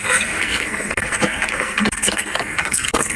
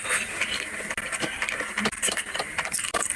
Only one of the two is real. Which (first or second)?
second